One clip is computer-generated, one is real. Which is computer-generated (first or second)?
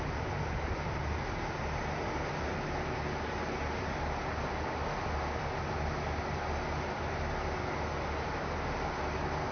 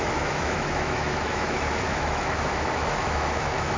second